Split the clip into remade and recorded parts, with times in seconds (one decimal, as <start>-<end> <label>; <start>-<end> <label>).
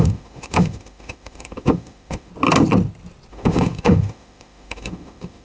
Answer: 0.0-2.3 remade; 2.3-3.3 recorded; 3.3-5.4 remade